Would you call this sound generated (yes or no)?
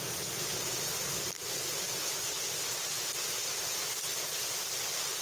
no